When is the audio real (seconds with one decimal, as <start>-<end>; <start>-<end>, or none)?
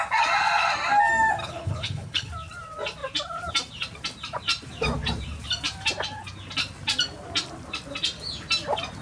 0.0-1.4; 2.3-9.0